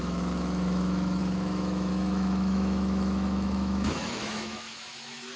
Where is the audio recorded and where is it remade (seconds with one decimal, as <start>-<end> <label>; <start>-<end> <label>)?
0.0-5.4 remade